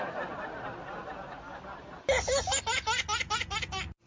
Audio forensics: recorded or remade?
recorded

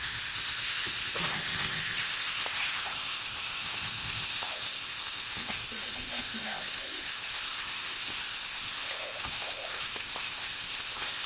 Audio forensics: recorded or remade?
remade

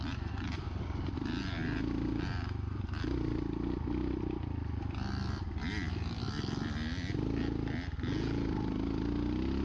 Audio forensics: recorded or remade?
recorded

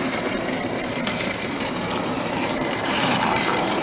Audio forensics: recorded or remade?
remade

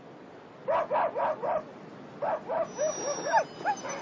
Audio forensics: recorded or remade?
recorded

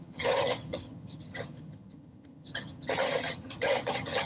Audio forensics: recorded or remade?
remade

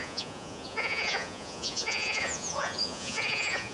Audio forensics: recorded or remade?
remade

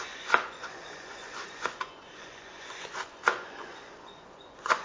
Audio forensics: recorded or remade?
remade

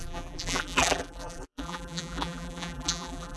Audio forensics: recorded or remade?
remade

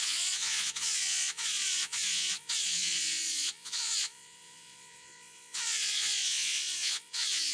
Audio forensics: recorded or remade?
remade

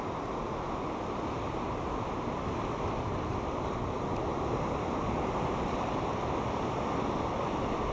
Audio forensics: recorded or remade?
recorded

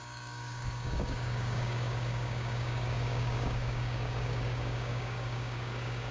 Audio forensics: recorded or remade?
remade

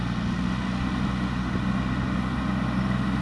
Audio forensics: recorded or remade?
recorded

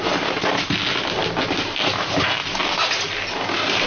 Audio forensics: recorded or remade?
recorded